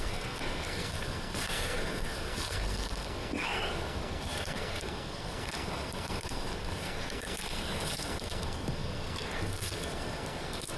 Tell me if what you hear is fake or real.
fake